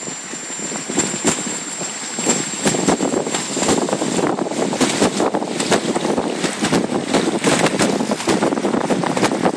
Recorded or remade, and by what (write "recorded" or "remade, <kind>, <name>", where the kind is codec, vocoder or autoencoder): recorded